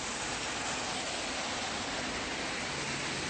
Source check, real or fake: real